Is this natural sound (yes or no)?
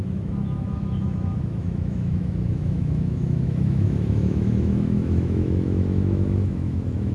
no